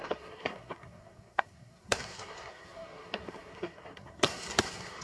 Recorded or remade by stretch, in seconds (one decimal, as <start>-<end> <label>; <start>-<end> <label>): 0.0-5.0 remade